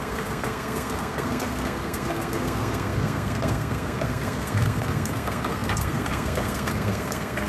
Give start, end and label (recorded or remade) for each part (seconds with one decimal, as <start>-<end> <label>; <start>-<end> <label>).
0.0-7.5 remade